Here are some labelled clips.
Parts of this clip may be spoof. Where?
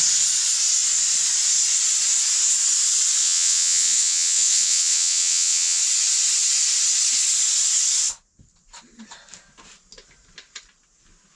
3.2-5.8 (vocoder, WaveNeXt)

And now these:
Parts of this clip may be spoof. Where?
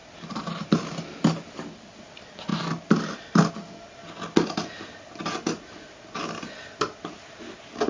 0.0-0.7 (vocoder, BigVGAN v2)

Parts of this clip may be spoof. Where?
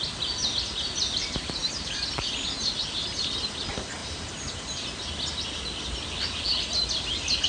none